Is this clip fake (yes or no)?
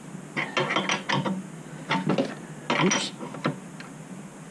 no